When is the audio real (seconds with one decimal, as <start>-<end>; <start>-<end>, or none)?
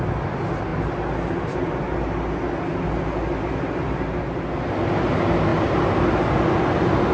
0.0-7.1